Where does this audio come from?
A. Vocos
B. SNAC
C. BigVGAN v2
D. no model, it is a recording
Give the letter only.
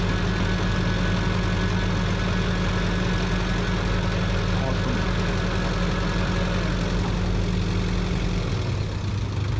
D